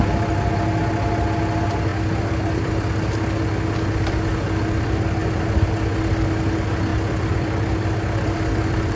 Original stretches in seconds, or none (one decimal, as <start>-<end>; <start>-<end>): 0.0-1.9; 2.7-6.9